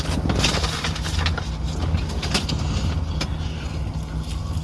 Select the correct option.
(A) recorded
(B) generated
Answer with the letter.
A